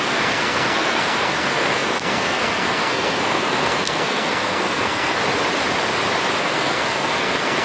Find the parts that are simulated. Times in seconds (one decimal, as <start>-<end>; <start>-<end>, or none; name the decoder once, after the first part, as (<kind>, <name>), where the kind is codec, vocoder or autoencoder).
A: 0.0-5.2 (codec, SNAC); 6.4-7.6